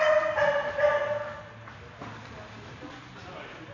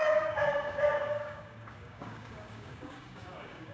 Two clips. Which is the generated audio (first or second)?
second